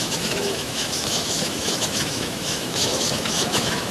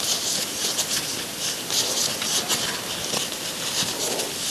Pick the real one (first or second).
second